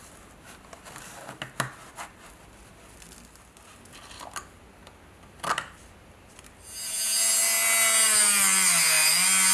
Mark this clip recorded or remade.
recorded